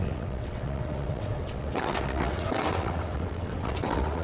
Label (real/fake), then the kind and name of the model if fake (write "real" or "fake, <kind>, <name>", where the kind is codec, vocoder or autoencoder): fake, vocoder, WaveNeXt